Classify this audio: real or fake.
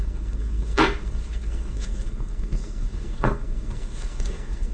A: fake